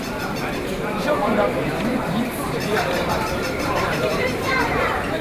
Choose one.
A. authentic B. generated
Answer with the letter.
B